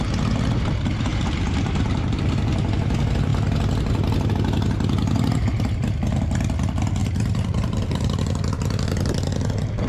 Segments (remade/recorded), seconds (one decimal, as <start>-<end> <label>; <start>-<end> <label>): 0.0-1.1 recorded; 1.1-2.3 remade; 2.3-7.0 recorded; 7.0-8.2 remade; 8.2-9.9 recorded